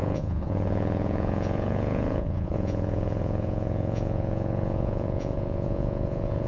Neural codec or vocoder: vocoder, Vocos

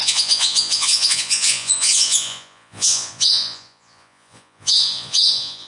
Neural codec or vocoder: vocoder, Vocos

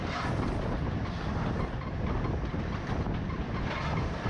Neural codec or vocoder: none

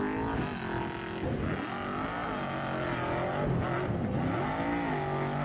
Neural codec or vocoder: none